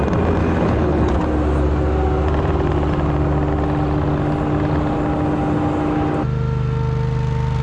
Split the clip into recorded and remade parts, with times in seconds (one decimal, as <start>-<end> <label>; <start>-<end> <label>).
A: 0.0-0.4 recorded; 0.4-1.1 remade; 1.1-7.6 recorded